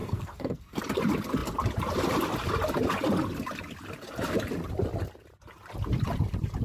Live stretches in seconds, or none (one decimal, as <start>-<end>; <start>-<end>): 0.8-6.6